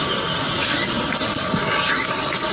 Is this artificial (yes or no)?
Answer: no